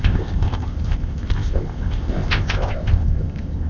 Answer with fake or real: fake